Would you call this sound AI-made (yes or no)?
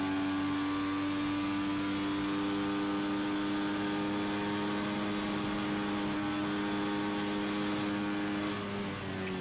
no